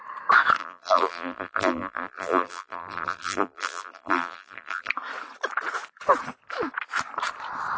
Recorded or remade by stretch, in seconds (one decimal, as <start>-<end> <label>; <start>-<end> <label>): 0.0-0.6 recorded; 0.6-4.9 remade; 4.9-7.8 recorded